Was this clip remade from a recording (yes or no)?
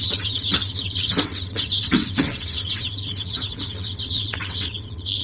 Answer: yes